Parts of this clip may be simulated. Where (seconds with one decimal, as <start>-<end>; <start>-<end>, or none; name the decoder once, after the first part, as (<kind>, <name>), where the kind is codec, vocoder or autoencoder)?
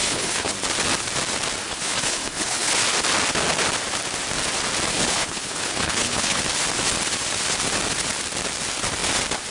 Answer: 0.0-0.5 (codec, HILCodec); 1.6-2.7; 4.9-6.4